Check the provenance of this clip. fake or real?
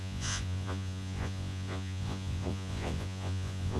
fake